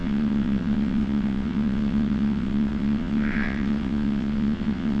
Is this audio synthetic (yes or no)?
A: yes